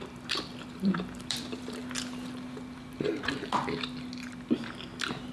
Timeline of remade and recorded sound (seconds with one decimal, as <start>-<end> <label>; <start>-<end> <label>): 0.0-1.8 remade; 1.8-5.3 recorded